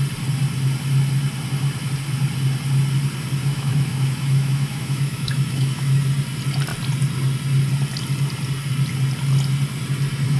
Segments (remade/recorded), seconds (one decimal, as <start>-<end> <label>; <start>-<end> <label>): 0.0-3.4 recorded; 3.4-6.0 remade; 6.0-10.4 recorded